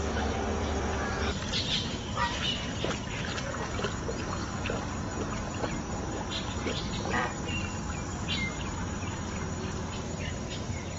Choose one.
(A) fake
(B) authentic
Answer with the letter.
B